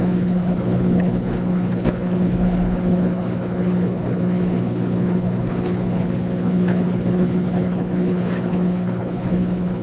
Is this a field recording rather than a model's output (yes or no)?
no